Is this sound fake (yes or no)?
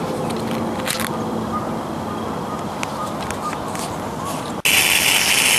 no